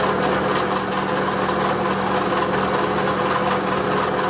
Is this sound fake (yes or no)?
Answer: no